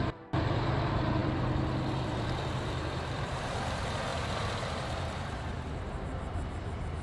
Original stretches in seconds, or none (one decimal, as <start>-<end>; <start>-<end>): none